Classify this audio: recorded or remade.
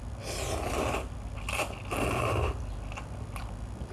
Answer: recorded